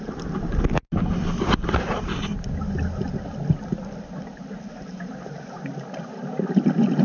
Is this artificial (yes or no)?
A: no